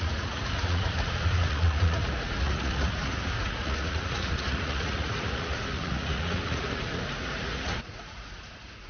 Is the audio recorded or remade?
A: remade